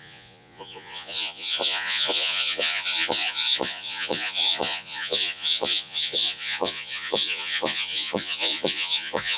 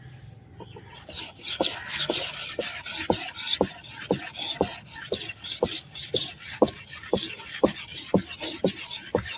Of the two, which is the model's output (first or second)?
first